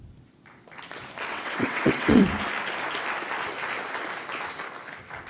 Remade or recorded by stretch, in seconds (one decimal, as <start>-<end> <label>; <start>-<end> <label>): 0.0-1.3 recorded; 1.3-2.2 remade; 2.2-5.3 recorded